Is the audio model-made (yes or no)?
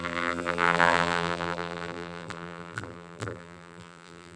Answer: yes